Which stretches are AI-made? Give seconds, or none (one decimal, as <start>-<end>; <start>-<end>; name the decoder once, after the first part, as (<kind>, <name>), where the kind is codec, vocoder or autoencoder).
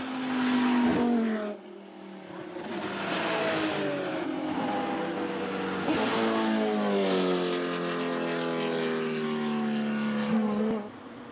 none